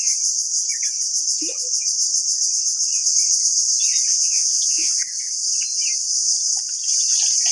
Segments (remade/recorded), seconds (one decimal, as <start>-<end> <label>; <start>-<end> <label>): 0.0-4.1 recorded; 4.1-4.9 remade; 4.9-7.5 recorded